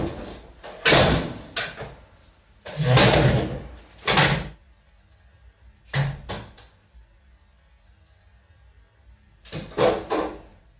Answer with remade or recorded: recorded